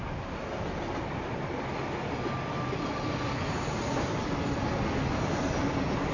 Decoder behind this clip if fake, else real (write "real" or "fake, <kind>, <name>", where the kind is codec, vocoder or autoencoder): real